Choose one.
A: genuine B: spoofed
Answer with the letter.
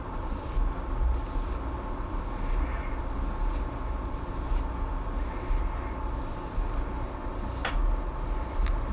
A